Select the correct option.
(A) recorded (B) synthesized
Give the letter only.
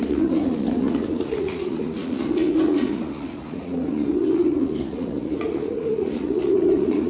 B